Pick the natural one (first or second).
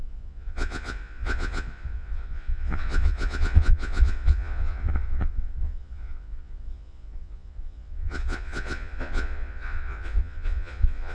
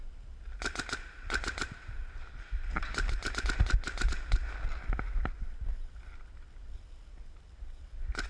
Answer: second